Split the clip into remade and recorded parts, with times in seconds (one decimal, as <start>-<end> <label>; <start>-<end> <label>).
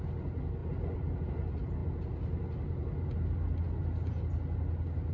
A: 0.0-5.1 recorded